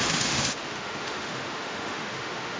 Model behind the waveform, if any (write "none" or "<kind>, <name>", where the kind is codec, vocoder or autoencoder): autoencoder, DAC-VAE